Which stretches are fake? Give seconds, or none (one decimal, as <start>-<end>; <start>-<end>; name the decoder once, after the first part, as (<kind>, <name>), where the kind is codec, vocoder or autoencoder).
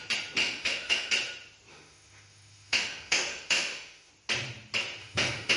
0.4-1.1 (autoencoder, DAC-VAE); 1.7-4.1; 5.0-5.6